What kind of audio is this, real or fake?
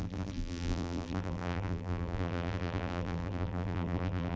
fake